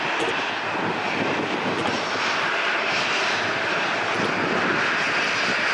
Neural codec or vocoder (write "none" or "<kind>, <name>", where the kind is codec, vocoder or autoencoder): none